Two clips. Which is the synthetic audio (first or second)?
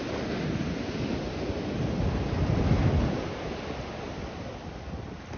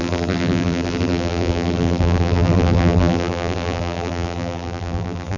second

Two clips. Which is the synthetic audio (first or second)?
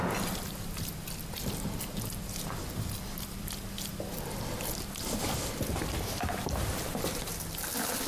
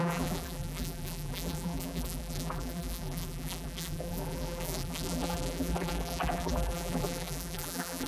second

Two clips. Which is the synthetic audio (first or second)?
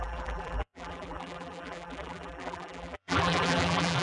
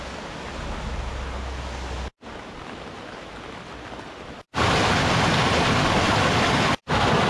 first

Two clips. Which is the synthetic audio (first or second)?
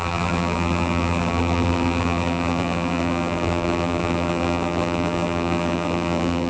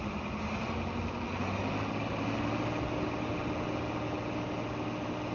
first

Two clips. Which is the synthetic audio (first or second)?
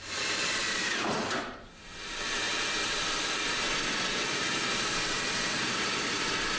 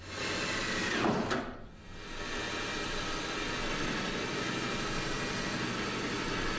first